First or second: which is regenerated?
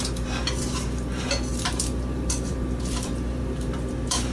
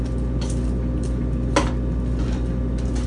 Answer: first